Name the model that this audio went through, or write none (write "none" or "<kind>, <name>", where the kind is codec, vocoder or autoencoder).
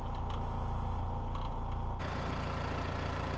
none